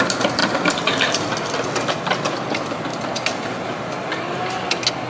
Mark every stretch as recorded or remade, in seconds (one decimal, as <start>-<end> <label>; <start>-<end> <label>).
0.0-0.4 recorded; 0.4-1.3 remade; 1.3-5.1 recorded